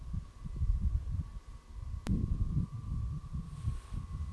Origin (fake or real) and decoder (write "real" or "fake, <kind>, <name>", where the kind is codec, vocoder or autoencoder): real